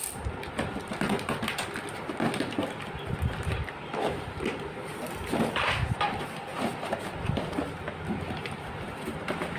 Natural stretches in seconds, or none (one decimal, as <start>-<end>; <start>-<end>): 0.0-9.6